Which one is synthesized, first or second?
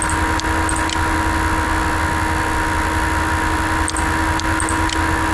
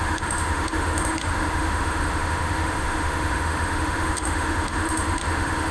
second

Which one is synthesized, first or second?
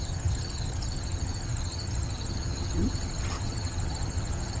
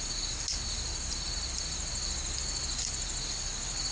first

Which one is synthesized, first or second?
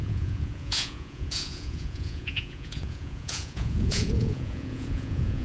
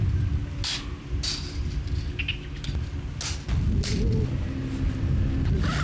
first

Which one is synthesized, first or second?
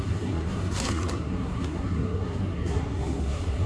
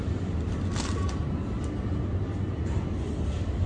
first